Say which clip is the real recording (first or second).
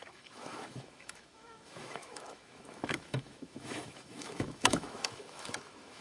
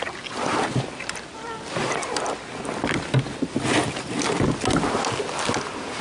second